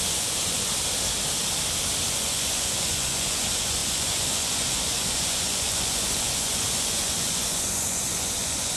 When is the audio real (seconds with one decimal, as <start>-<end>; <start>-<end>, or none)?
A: 0.7-2.1